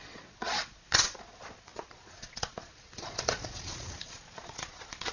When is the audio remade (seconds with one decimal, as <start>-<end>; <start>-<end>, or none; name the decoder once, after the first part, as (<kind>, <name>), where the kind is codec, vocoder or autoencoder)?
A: 0.0-5.1 (vocoder, Vocos)